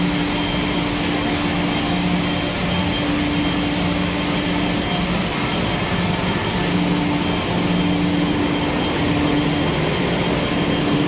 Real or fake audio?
real